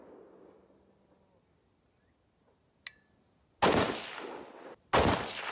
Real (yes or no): yes